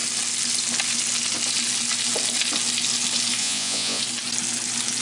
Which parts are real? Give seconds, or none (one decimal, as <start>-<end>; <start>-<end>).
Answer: 0.0-3.4; 4.0-5.0